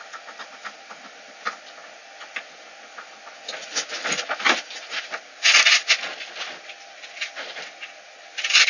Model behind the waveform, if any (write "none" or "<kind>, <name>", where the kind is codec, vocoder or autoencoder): none